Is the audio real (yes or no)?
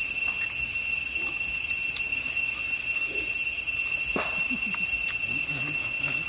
yes